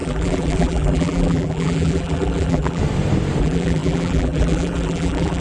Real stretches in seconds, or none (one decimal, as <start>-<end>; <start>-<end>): 2.8-3.4